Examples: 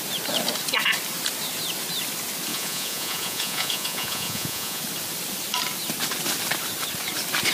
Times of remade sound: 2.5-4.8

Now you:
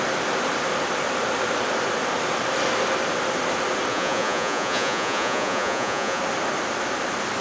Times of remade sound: 3.9-6.2

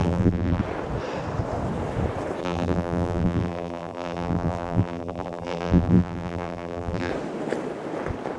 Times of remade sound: 0.0-0.6; 2.4-7.1